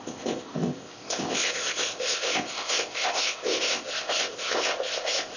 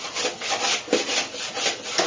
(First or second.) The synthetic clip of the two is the first